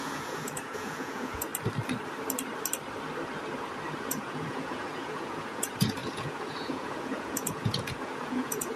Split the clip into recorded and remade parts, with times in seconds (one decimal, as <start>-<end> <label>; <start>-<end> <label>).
0.0-1.5 remade; 1.5-4.1 recorded; 4.1-8.8 remade